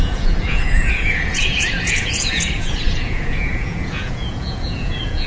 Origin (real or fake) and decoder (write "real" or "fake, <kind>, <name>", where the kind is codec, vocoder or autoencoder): fake, vocoder, Vocos